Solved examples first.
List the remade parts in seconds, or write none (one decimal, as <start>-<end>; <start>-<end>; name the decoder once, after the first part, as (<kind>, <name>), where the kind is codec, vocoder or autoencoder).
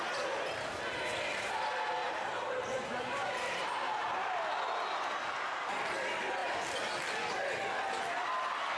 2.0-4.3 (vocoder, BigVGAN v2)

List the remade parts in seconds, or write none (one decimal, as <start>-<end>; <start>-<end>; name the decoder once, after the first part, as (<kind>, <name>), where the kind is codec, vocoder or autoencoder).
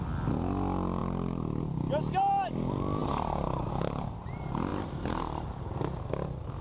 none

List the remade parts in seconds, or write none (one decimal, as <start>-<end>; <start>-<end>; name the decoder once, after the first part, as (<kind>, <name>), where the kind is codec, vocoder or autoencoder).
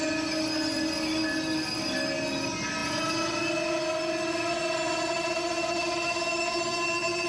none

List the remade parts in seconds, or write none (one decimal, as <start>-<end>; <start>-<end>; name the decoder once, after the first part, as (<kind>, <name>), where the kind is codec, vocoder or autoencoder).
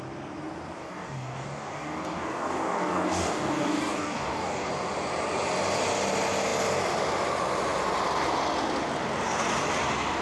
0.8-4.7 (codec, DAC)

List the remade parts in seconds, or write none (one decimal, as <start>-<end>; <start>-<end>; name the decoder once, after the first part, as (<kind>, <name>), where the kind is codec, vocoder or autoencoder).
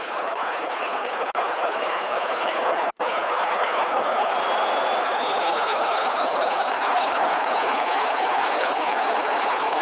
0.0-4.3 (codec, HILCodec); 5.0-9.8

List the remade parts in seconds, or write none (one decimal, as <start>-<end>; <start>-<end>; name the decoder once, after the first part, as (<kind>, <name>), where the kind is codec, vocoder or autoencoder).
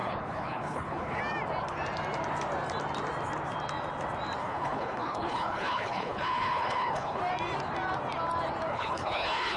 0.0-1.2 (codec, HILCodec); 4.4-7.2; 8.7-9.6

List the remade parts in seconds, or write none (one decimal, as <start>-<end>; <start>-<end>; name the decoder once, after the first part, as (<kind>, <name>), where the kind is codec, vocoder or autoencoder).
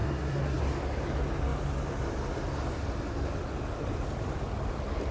0.0-0.6 (codec, SNAC)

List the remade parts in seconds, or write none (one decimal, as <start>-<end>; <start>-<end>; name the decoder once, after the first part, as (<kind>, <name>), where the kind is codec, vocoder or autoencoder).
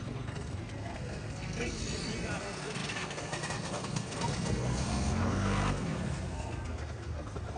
0.0-1.8 (codec, SNAC); 2.4-7.6